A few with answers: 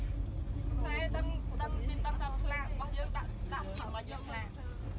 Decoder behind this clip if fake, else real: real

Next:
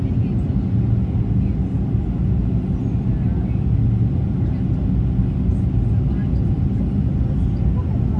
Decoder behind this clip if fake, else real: real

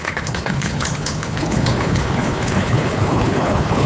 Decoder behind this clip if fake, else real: fake, codec, HILCodec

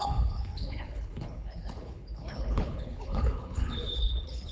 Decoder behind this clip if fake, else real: fake, codec, HILCodec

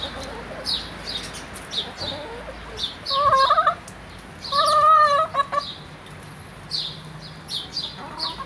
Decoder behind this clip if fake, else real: real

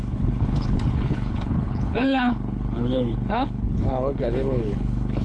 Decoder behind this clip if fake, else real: fake, codec, HILCodec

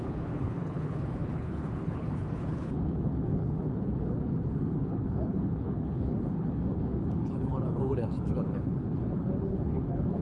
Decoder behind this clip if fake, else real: fake, codec, HILCodec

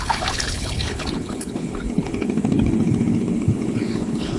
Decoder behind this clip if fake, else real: fake, codec, HILCodec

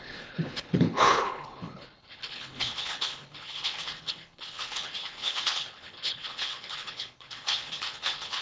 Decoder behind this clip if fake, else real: fake, codec, HILCodec